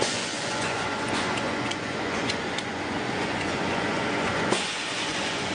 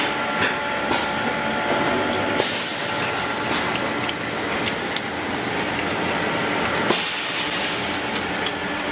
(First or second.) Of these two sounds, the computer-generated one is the first